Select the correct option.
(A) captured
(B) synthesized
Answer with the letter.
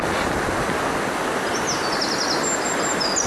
A